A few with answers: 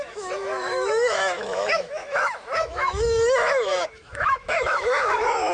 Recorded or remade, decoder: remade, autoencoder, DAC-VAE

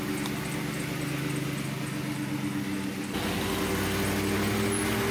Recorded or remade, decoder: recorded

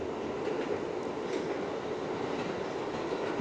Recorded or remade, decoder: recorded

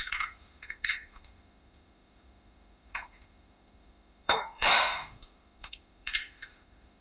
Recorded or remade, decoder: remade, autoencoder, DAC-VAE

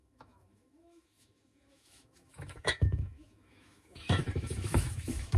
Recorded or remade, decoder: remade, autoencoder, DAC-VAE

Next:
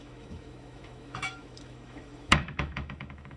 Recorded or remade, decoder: remade, autoencoder, DAC-VAE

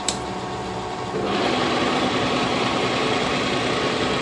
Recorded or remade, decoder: recorded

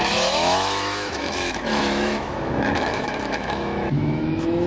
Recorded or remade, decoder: remade, autoencoder, DAC-VAE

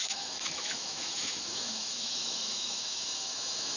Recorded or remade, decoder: remade, autoencoder, DAC-VAE